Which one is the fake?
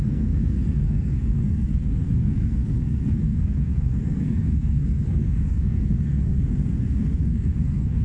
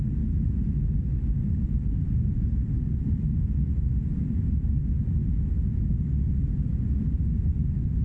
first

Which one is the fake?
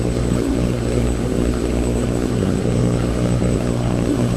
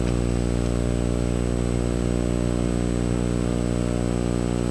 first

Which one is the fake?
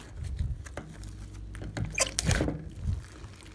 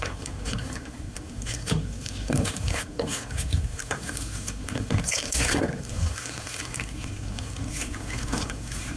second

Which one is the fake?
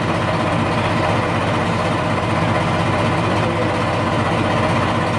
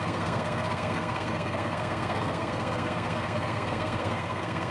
second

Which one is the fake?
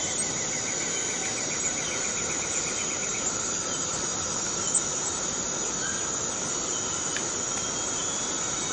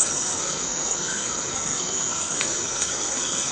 second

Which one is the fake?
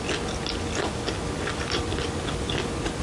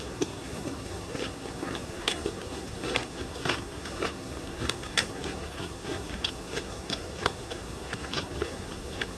second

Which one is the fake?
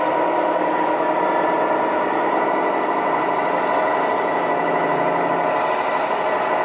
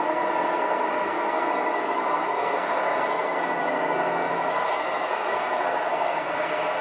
second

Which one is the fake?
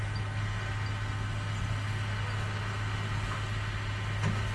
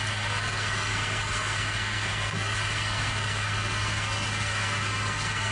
second